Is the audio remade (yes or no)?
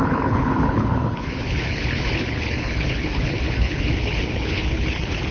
yes